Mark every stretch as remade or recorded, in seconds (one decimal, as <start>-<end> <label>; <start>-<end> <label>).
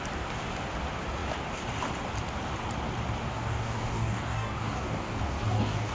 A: 0.0-3.3 recorded; 3.3-5.9 remade